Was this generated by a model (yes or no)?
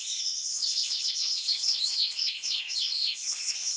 yes